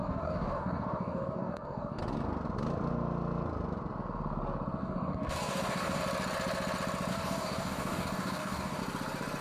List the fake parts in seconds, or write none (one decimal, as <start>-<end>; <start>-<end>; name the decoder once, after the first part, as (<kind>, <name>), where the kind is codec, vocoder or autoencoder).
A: 0.0-2.0 (codec, DAC); 4.8-6.0; 7.1-8.8